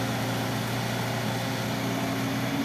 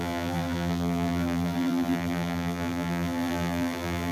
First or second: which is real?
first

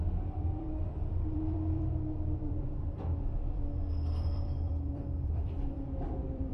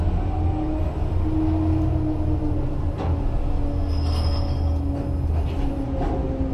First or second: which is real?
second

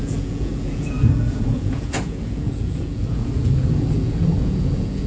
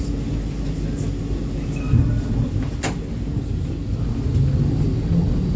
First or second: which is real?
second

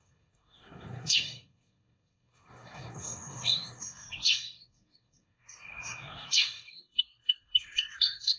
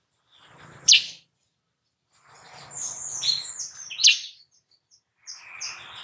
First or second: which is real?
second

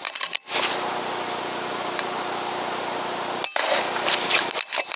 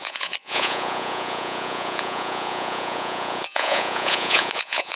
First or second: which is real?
first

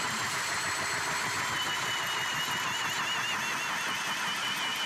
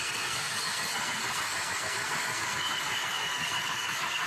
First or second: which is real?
first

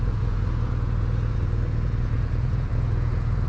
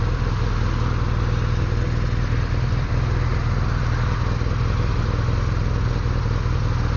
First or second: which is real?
second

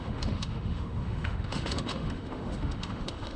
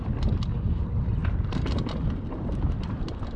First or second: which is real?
second